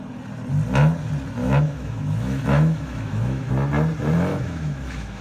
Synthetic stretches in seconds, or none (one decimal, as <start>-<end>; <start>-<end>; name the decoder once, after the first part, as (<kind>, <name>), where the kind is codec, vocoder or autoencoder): 1.4-3.5 (autoencoder, DAC-VAE); 4.3-5.2